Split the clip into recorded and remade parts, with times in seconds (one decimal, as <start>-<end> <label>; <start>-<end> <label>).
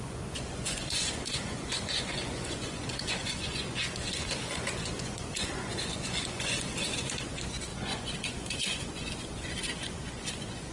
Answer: 0.0-10.7 remade